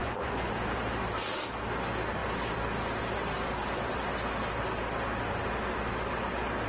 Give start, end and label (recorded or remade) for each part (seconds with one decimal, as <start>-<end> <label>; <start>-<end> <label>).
0.0-0.5 remade; 0.5-6.7 recorded